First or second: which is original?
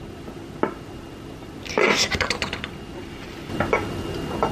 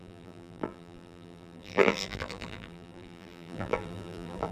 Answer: first